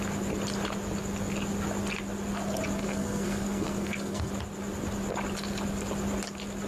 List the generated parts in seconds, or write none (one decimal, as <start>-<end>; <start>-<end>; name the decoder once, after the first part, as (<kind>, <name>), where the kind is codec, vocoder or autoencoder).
2.8-4.3 (codec, SNAC)